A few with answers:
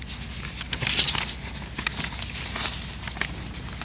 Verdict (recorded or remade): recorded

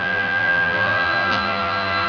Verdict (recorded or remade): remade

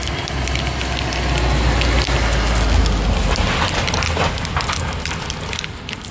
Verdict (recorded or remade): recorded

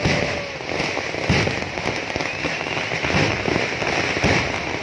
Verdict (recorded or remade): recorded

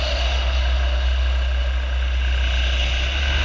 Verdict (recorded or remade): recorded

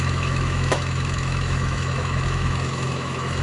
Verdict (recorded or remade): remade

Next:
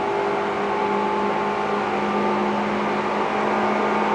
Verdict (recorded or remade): recorded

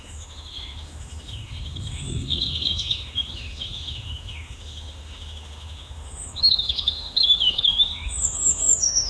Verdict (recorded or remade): remade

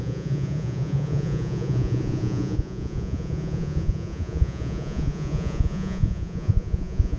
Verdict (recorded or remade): remade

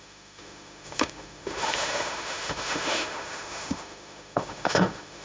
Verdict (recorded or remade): remade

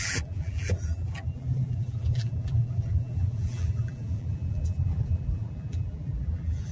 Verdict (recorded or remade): remade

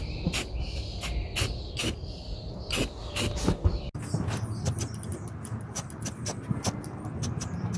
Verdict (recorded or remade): recorded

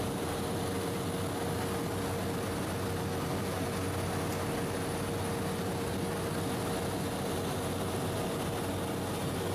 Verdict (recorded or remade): recorded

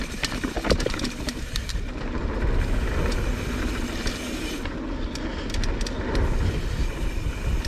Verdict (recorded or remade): recorded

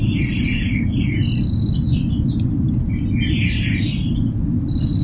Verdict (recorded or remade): recorded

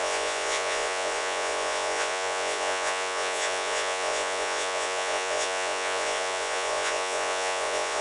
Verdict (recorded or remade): remade